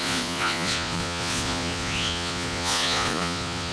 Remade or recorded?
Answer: remade